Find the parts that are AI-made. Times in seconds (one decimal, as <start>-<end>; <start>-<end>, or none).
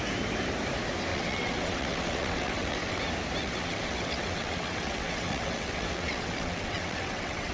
1.1-3.0; 3.4-7.5